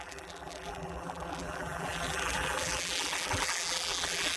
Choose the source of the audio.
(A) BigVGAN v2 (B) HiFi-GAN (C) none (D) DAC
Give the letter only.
A